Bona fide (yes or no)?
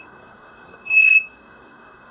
no